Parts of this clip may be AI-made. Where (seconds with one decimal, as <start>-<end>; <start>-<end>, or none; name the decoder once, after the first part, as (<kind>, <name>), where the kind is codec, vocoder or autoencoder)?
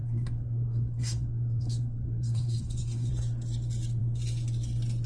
0.0-3.1 (codec, SNAC)